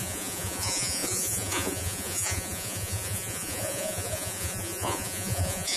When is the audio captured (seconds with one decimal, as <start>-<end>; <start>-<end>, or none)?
none